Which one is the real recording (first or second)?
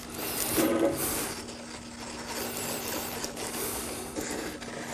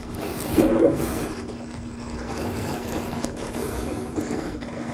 first